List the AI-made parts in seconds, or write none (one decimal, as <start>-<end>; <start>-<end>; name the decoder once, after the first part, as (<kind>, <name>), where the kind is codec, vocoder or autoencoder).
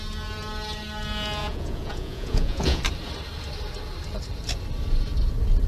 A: 1.4-2.8 (vocoder, Vocos)